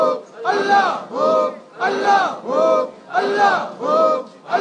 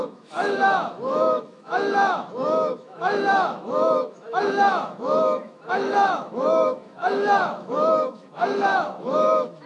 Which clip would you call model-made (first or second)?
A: second